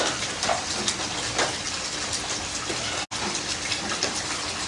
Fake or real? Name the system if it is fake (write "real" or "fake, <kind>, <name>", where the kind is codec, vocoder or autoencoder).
real